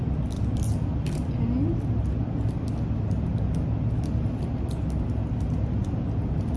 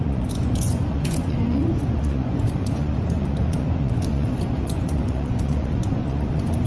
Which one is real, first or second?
first